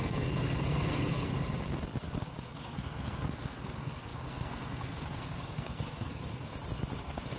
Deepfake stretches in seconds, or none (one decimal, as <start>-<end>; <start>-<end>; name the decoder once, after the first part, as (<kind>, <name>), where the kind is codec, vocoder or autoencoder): 0.0-1.3 (codec, SNAC); 2.1-6.5; 7.0-7.4